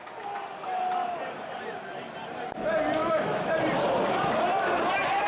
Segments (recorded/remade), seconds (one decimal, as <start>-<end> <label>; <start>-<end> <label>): 0.0-3.0 recorded; 3.0-3.5 remade; 3.5-5.3 recorded